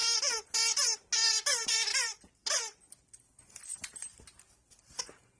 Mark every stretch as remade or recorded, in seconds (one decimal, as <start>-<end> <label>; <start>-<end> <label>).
0.0-3.7 recorded; 3.7-5.0 remade; 5.0-5.4 recorded